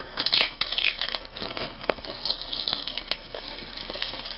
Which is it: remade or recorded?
remade